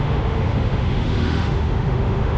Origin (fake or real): fake